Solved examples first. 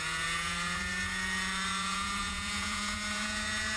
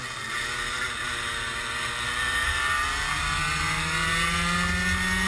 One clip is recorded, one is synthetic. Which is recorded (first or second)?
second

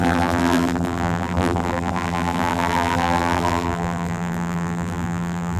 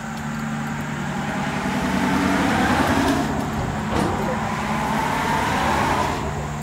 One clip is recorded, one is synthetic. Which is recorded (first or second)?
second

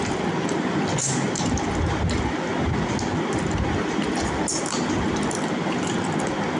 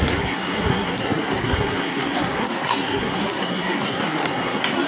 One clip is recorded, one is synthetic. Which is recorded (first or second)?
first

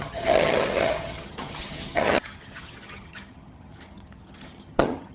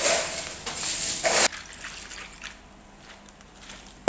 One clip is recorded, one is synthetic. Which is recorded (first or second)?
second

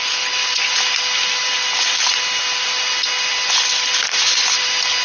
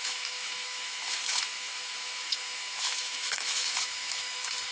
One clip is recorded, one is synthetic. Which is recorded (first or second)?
first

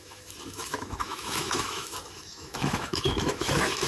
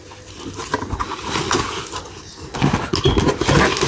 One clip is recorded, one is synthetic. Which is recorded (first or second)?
second